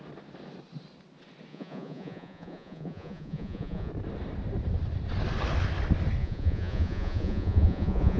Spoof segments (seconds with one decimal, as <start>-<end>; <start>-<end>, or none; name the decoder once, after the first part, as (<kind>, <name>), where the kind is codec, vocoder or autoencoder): 1.5-3.9 (vocoder, Vocos); 6.2-8.2